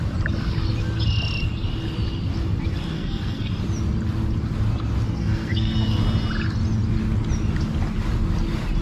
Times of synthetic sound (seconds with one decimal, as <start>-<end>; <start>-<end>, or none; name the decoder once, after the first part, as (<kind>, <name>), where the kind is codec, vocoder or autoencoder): 2.9-3.5 (codec, SNAC); 5.2-6.0